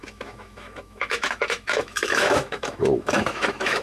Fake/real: fake